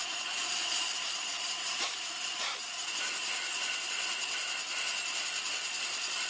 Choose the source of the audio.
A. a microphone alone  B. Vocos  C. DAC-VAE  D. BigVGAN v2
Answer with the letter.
A